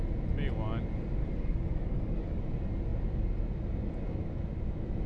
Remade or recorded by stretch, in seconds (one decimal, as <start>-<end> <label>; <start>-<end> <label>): 0.0-1.2 recorded; 1.2-2.4 remade; 2.4-5.1 recorded